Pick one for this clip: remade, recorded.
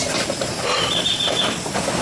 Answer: recorded